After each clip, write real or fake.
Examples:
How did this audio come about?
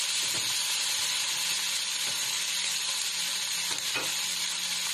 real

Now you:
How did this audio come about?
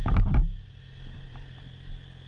real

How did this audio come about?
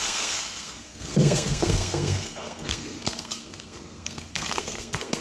fake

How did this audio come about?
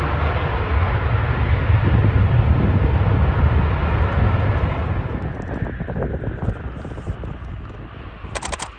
real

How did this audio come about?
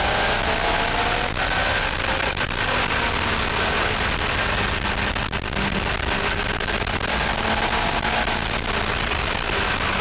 real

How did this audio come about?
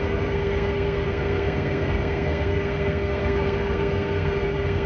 fake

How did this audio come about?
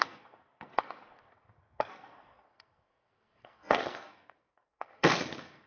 fake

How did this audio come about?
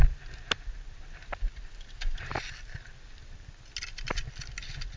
real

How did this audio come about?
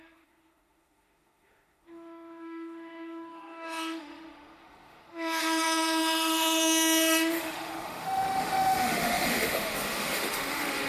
fake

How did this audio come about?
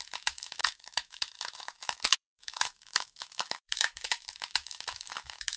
fake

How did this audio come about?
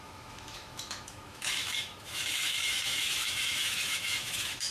fake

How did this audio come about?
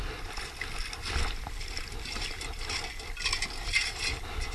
real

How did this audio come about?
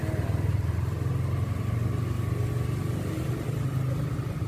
real